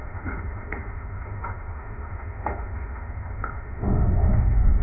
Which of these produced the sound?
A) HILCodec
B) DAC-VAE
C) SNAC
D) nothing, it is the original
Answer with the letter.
B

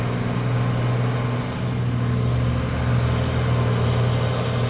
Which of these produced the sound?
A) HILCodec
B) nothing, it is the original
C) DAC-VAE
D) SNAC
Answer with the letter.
B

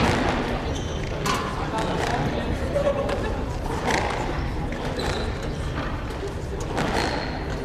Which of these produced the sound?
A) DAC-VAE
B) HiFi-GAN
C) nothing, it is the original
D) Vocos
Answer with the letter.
C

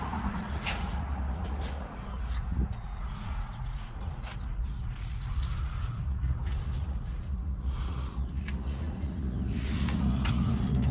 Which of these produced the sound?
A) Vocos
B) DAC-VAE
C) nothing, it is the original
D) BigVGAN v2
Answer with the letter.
A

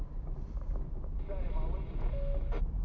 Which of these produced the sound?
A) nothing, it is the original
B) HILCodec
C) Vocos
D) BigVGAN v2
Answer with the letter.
A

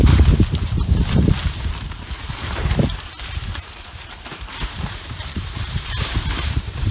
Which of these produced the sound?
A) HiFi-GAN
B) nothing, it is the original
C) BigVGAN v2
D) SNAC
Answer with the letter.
C